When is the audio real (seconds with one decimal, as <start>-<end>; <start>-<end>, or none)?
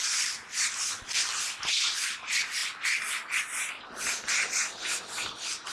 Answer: 0.0-5.7